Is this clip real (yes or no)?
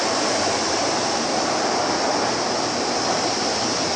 yes